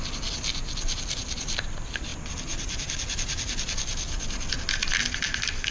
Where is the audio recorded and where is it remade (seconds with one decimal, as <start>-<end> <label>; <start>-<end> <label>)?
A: 0.0-5.7 recorded